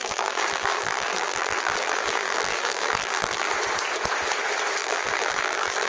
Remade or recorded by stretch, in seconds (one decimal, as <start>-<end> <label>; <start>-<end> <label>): 0.0-3.5 remade; 3.5-4.8 recorded; 4.8-5.9 remade